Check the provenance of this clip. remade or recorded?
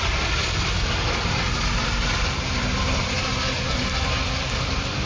recorded